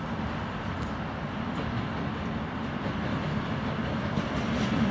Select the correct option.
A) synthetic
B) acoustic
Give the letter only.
B